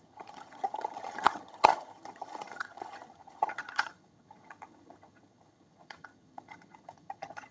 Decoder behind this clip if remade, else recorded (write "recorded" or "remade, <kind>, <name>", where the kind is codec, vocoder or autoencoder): remade, vocoder, HiFi-GAN